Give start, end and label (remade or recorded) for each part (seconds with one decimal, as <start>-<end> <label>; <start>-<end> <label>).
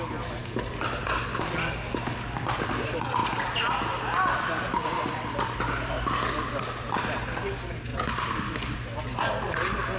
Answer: 0.0-7.9 recorded; 7.9-9.0 remade; 9.0-10.0 recorded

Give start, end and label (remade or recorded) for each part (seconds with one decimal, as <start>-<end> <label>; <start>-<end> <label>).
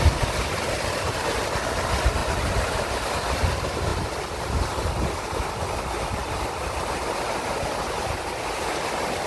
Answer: 0.0-6.2 recorded; 6.2-6.8 remade; 6.8-9.3 recorded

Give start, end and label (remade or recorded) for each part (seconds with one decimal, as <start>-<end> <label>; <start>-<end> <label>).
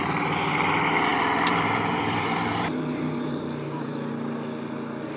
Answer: 0.0-1.1 recorded; 1.1-4.1 remade; 4.1-5.2 recorded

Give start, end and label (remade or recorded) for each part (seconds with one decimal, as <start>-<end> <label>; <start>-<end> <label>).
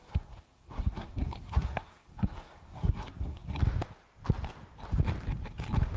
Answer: 0.0-3.6 remade; 3.6-6.0 recorded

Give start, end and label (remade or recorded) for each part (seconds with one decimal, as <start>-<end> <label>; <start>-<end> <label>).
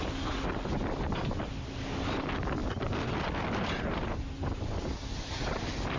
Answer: 0.0-6.0 recorded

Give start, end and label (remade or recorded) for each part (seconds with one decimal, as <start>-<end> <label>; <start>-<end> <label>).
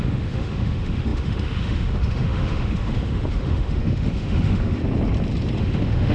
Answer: 0.0-4.8 remade; 4.8-5.6 recorded; 5.6-6.1 remade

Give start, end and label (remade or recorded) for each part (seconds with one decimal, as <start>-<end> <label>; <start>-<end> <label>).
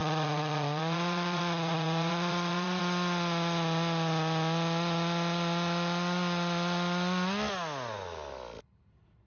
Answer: 0.0-2.8 remade; 2.8-9.3 recorded